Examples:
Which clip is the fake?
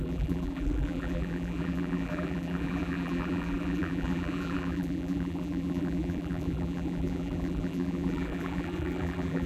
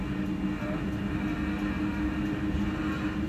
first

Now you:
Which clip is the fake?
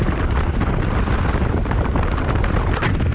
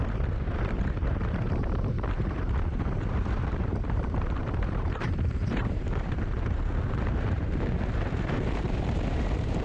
second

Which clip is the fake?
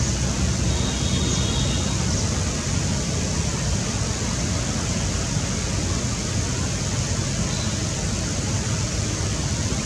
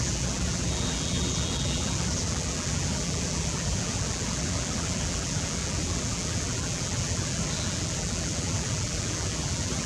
second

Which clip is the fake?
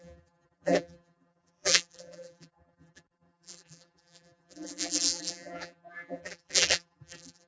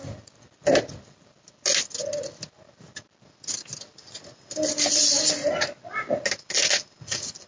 first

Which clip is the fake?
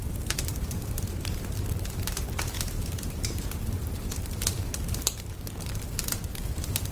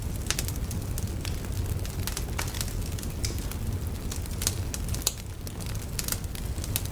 first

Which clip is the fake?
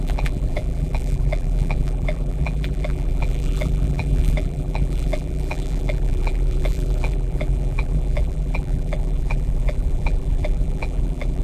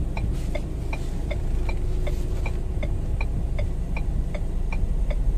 first